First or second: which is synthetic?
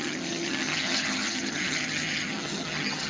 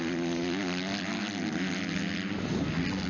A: first